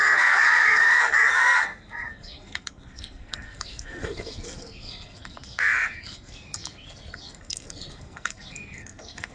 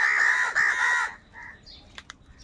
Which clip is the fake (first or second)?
first